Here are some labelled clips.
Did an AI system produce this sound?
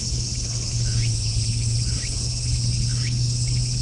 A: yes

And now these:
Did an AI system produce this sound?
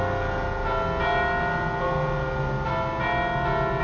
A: no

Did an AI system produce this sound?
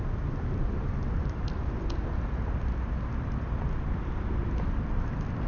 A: no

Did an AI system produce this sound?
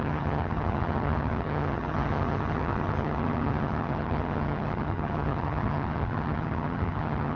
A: yes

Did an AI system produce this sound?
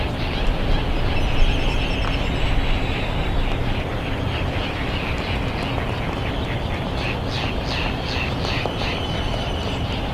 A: no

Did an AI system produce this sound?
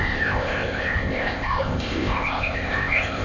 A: yes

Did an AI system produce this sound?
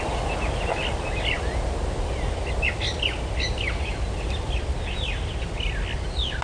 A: no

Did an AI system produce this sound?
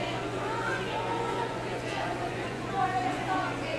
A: yes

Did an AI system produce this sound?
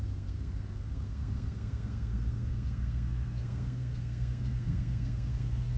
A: yes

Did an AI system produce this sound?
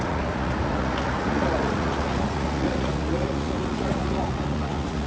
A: yes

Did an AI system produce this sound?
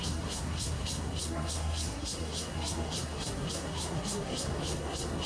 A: yes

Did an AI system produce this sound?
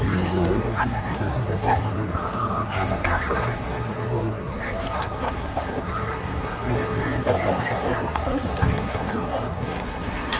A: yes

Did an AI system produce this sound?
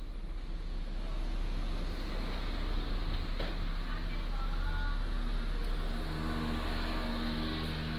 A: no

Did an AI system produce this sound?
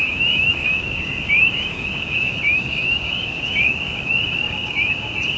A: yes